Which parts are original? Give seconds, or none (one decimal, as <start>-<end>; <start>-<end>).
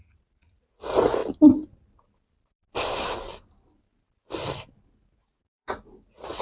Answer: 1.2-4.9